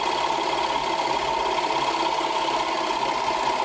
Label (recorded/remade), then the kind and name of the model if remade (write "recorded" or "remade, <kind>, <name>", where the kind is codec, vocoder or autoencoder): recorded